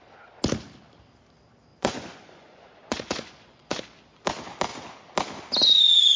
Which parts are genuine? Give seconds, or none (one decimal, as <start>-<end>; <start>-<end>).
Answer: 0.0-1.7; 3.8-6.2